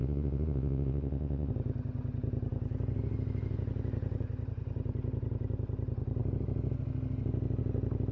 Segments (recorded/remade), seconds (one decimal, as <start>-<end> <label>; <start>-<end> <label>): 0.0-1.5 remade; 1.5-8.1 recorded

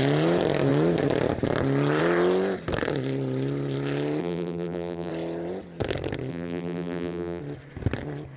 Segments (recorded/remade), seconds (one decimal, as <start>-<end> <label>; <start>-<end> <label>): 0.0-4.2 recorded; 4.2-5.1 remade; 5.1-6.3 recorded; 6.3-7.4 remade; 7.4-8.4 recorded

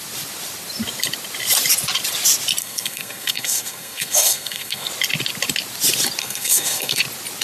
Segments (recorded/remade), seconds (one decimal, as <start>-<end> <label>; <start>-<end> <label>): 0.0-2.6 recorded; 2.6-4.9 remade; 4.9-6.2 recorded; 6.2-7.0 remade; 7.0-7.4 recorded

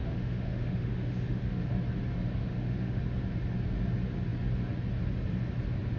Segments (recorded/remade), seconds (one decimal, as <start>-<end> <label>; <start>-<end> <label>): 0.0-1.7 remade; 1.7-2.4 recorded; 2.4-3.0 remade; 3.0-6.0 recorded